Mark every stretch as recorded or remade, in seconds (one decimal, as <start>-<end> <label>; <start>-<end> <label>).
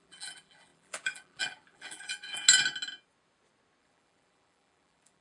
0.0-2.4 remade; 2.4-3.8 recorded; 3.8-5.2 remade